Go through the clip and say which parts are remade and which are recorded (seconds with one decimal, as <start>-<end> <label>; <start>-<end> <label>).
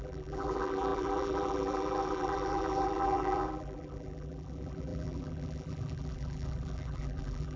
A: 0.0-7.6 remade